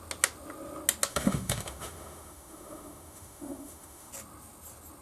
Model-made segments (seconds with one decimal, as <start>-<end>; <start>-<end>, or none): 1.1-4.1